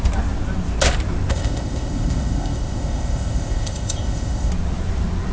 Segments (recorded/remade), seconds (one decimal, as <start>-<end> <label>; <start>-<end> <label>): 0.0-1.3 recorded; 1.3-4.5 remade; 4.5-5.3 recorded